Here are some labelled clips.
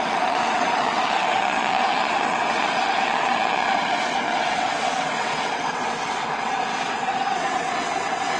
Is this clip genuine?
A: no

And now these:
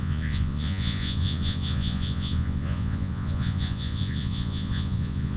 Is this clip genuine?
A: no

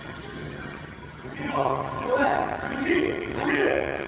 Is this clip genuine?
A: no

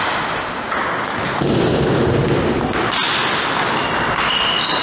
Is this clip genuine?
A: yes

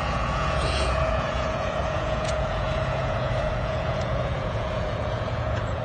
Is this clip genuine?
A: no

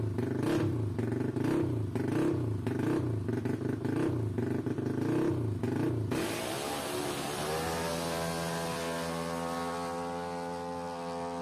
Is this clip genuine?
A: yes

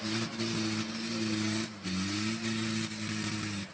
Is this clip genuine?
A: yes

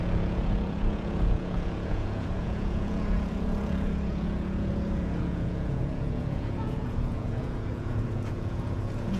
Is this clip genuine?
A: no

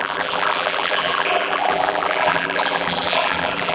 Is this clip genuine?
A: no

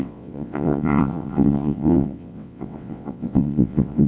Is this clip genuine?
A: no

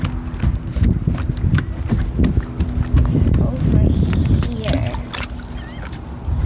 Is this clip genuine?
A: yes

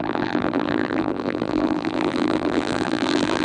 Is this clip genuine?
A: no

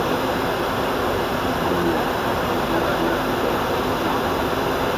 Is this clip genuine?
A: yes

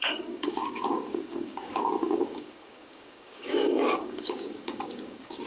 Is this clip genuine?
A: no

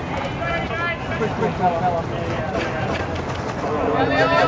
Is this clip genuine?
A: yes